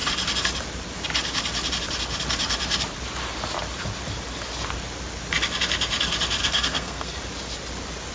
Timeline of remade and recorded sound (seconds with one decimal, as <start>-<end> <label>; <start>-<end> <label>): 0.0-6.4 recorded; 6.4-7.2 remade; 7.2-8.1 recorded